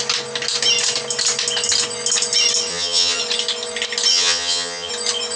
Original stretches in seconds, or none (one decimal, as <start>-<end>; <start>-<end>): 0.0-2.7; 3.2-4.1; 4.9-5.4